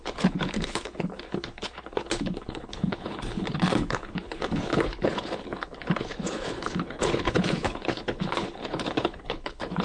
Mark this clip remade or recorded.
remade